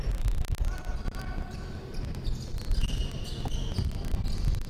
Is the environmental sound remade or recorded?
recorded